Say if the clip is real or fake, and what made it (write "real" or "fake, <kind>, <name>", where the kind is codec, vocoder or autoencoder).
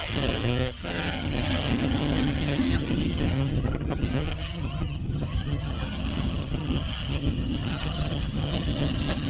fake, vocoder, HiFi-GAN